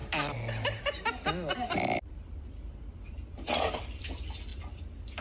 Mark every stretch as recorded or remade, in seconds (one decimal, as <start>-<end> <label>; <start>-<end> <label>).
0.0-2.1 recorded; 2.1-4.5 remade; 4.5-5.2 recorded